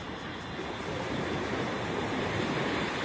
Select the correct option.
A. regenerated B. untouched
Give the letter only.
B